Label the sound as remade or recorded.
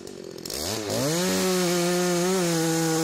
recorded